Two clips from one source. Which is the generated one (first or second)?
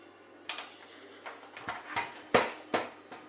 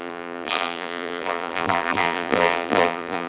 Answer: second